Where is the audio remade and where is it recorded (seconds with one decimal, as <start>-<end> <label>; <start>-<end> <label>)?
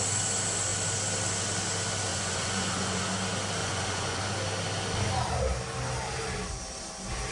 0.0-2.1 recorded; 2.1-3.0 remade; 3.0-3.6 recorded; 3.6-4.2 remade; 4.2-7.3 recorded